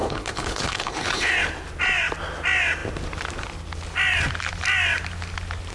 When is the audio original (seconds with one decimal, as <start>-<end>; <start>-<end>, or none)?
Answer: 1.3-5.7